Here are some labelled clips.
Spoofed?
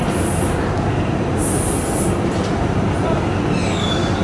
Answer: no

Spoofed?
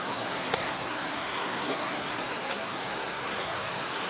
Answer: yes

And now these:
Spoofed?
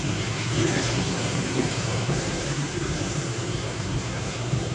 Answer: yes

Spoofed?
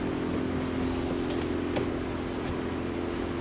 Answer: no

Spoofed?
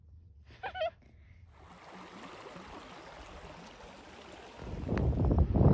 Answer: no